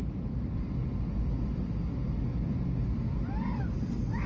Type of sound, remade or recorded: recorded